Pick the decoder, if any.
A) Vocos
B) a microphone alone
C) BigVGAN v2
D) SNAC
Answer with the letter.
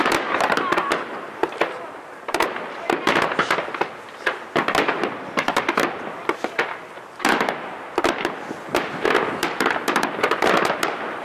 B